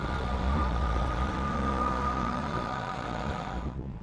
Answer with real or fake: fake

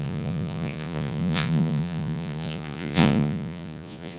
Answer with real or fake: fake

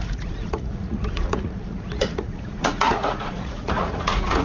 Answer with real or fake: fake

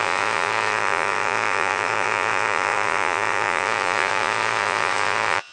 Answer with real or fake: fake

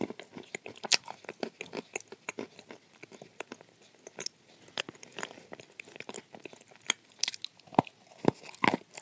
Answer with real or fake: real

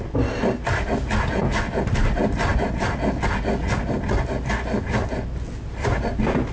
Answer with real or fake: real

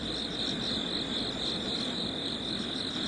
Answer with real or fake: real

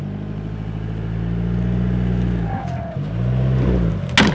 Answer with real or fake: real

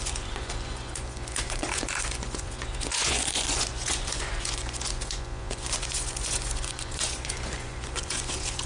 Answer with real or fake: fake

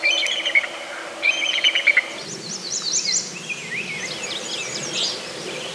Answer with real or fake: real